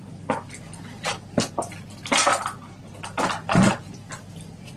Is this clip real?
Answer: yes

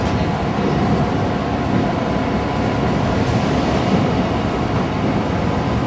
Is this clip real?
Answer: no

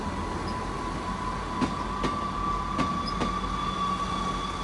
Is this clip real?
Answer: yes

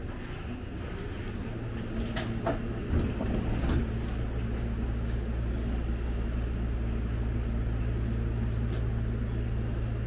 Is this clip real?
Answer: yes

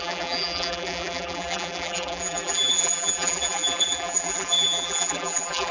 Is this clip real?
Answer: no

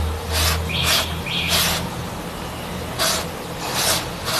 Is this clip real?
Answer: yes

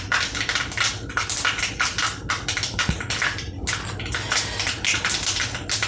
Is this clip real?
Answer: yes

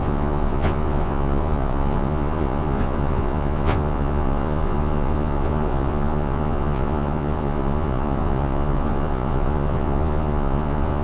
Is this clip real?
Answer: no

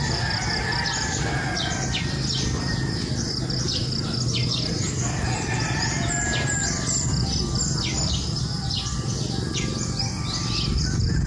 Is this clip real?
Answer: yes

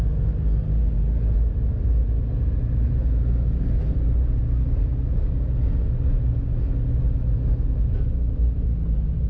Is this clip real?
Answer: yes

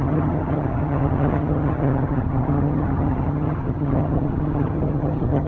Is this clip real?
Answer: no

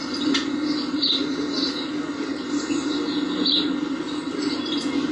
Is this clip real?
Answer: yes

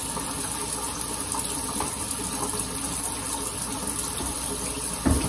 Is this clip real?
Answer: yes